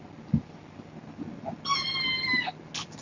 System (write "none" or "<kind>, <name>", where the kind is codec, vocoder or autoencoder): none